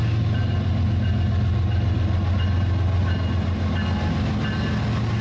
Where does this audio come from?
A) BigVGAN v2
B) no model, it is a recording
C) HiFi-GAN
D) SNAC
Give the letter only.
B